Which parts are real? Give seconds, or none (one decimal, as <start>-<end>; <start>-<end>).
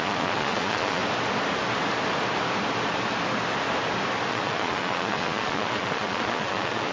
1.0-4.3